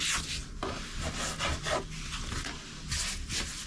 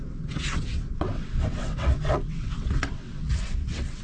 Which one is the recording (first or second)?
first